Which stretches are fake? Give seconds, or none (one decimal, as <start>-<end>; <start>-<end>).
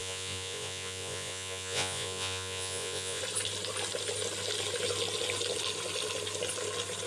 0.0-3.2